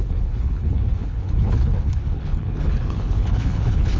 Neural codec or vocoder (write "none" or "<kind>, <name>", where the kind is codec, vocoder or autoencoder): codec, HILCodec